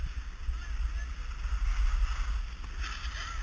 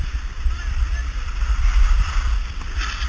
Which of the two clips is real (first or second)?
first